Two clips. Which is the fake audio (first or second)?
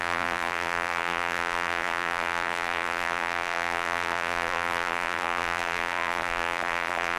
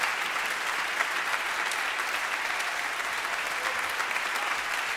first